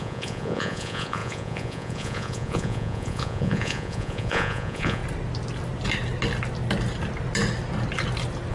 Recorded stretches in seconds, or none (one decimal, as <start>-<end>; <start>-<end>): 5.0-8.5